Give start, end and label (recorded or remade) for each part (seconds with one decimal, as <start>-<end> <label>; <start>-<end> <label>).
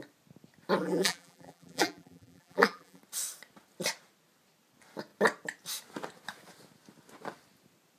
0.0-0.8 recorded; 0.8-3.0 remade; 3.0-8.0 recorded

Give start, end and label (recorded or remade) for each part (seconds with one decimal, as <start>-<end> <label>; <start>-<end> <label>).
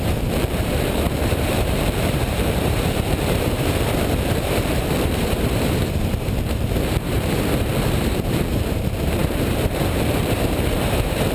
0.0-11.3 remade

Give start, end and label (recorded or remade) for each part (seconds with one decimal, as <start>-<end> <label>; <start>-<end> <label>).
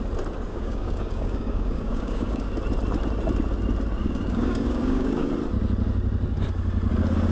0.0-0.5 recorded; 0.5-2.5 remade; 2.5-4.0 recorded; 4.0-5.3 remade; 5.3-7.3 recorded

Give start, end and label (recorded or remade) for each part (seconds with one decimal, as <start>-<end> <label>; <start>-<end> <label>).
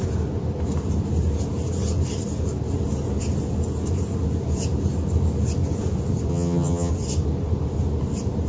0.0-6.3 recorded; 6.3-6.9 remade; 6.9-8.5 recorded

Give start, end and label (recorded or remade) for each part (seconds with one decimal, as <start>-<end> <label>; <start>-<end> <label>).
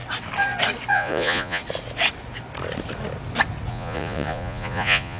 0.0-0.9 recorded; 0.9-1.6 remade; 1.6-3.7 recorded; 3.7-5.2 remade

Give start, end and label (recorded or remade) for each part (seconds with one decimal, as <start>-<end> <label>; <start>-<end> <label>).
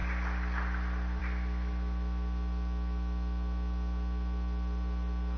0.0-5.4 recorded